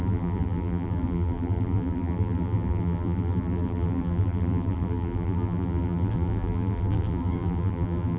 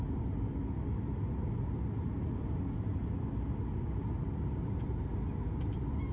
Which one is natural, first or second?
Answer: second